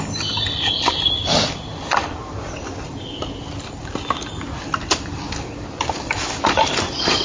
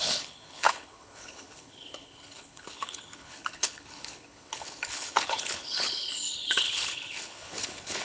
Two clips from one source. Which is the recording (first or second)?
first